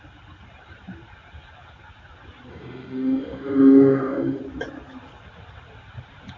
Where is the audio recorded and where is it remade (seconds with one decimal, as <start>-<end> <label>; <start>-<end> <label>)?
0.0-2.5 recorded; 2.5-4.4 remade; 4.4-6.4 recorded